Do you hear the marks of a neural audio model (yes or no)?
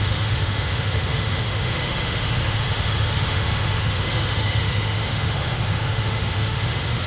yes